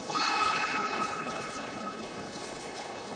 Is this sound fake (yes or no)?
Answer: yes